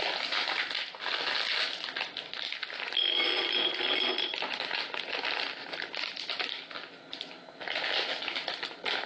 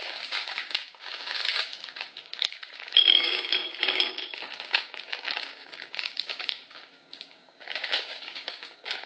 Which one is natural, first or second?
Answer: first